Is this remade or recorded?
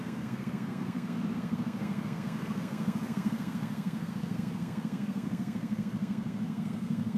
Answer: remade